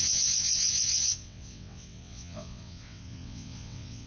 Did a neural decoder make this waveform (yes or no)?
yes